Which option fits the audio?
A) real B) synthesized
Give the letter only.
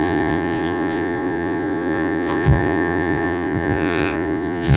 B